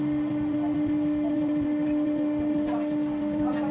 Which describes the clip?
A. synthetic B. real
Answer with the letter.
B